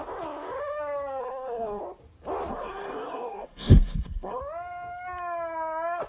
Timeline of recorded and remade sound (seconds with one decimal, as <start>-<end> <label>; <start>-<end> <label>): 0.0-1.2 recorded; 1.2-1.8 remade; 1.8-2.5 recorded; 2.5-4.4 remade; 4.4-6.1 recorded